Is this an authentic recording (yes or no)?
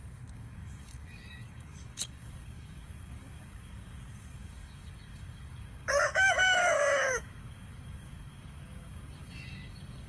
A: no